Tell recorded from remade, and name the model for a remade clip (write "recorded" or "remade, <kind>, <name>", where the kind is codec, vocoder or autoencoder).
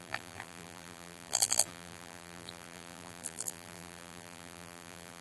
remade, vocoder, BigVGAN v2